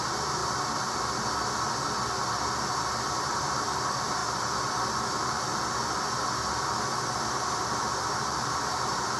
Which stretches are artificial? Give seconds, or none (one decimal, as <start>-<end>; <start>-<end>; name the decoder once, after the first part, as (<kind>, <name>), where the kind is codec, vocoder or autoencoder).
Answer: 0.0-0.4 (vocoder, BigVGAN v2); 3.1-4.2; 5.1-5.5; 7.6-9.2